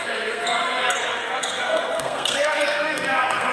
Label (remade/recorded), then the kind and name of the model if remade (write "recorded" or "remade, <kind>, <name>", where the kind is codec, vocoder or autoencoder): remade, codec, SNAC